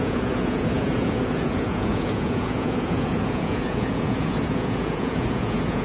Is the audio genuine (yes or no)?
no